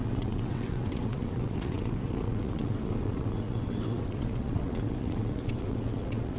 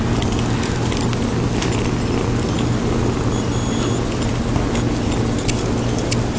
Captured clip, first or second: second